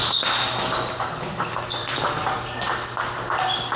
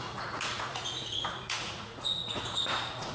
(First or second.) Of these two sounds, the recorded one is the first